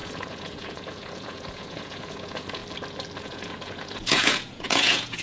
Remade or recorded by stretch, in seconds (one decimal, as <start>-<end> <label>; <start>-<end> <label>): 0.0-2.6 remade; 2.6-3.2 recorded; 3.2-5.2 remade

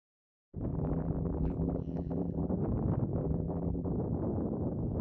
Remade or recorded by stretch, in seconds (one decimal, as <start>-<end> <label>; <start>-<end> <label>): 0.0-0.7 recorded; 0.7-2.5 remade; 2.5-3.2 recorded; 3.2-3.9 remade; 3.9-5.0 recorded

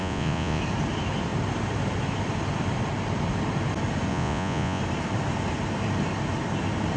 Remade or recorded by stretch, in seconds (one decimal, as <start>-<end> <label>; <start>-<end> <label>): 0.0-0.6 remade; 0.6-4.1 recorded; 4.1-4.8 remade; 4.8-7.0 recorded

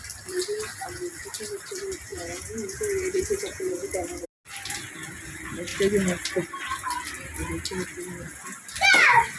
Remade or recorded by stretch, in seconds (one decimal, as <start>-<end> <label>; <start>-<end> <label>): 0.0-2.1 recorded; 2.1-4.0 remade; 4.0-9.4 recorded